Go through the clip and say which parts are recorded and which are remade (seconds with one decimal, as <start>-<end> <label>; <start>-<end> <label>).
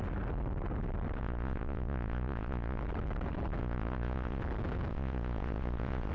0.0-1.2 recorded; 1.2-2.8 remade; 2.8-3.6 recorded; 3.6-4.4 remade; 4.4-4.9 recorded; 4.9-6.1 remade